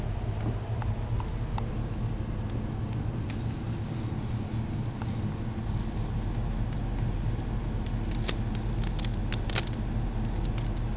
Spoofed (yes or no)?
no